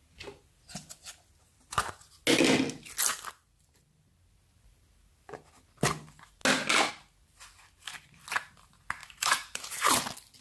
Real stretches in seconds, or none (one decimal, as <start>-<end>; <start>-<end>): 0.0-9.0; 10.0-10.4

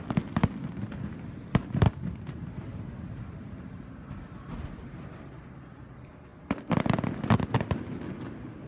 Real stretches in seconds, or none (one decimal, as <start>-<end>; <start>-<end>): 0.0-2.7; 5.4-8.7

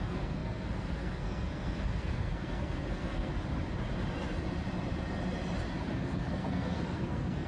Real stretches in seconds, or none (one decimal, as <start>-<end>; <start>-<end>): 3.3-5.8

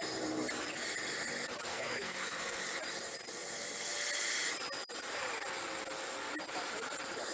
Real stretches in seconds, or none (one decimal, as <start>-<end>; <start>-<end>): 0.0-1.7; 2.6-7.3

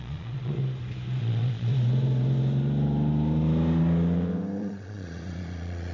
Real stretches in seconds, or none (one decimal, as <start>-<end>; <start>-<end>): 0.6-1.2; 1.7-4.6

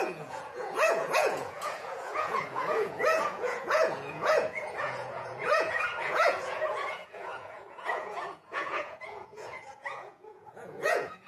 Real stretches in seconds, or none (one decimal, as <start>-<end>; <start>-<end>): none

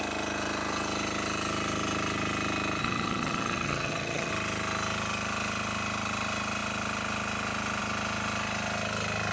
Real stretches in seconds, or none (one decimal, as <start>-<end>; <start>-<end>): 0.0-2.8; 4.3-9.3

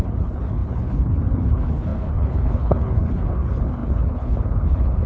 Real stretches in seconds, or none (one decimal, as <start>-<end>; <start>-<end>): none